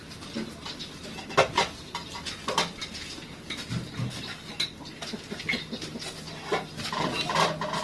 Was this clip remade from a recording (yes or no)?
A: no